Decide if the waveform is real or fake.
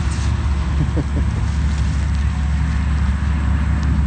real